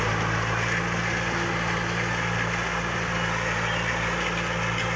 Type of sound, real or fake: real